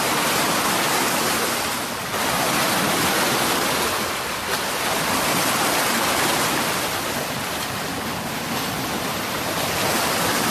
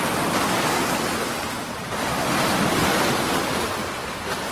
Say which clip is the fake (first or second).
first